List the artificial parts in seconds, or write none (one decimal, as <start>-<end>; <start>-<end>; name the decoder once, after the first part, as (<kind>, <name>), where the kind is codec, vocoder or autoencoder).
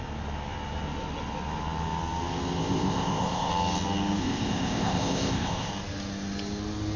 2.6-3.5 (codec, ZipCodec); 4.2-5.7